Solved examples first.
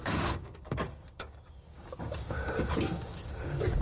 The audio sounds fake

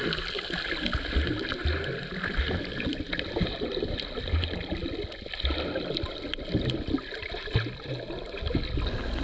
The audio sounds real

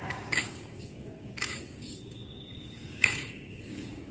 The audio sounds fake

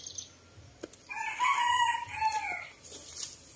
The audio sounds real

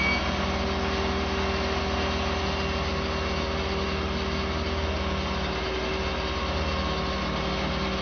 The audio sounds real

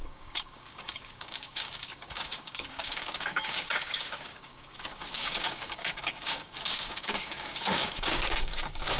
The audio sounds fake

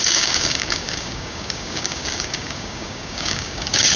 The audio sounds fake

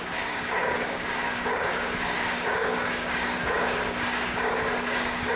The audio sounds fake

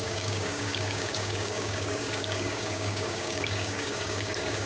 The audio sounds fake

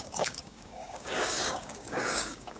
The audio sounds fake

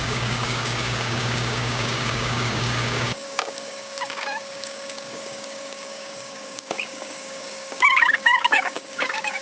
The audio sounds fake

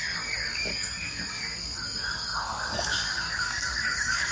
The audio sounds fake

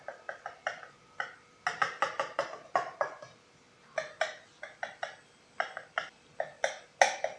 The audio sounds real